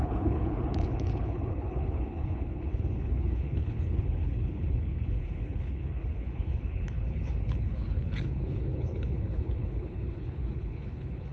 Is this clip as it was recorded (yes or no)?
no